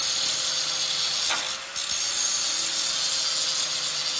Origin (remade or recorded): recorded